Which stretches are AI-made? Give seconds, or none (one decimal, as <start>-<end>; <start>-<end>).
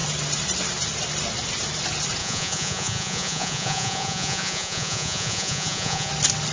2.2-6.1